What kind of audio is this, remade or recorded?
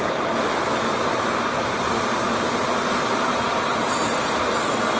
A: recorded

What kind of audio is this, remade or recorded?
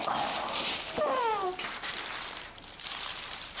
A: remade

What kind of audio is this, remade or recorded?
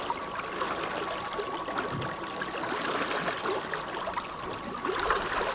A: recorded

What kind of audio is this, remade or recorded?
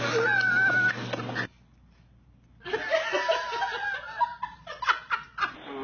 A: recorded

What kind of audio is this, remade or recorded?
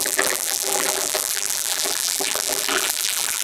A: remade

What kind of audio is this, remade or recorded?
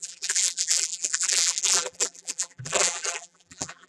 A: remade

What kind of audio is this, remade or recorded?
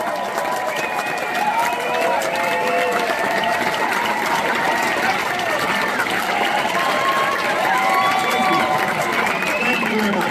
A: remade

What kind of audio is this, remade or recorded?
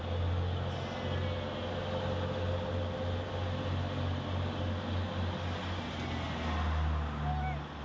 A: recorded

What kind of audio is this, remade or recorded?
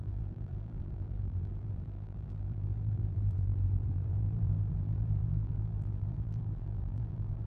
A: remade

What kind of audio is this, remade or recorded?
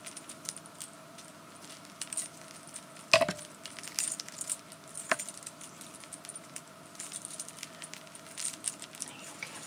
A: recorded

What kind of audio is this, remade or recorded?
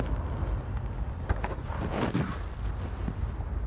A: recorded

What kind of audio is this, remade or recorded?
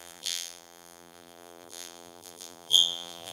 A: remade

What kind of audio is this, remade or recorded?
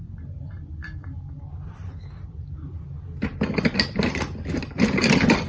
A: recorded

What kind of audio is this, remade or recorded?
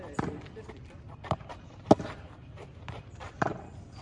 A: remade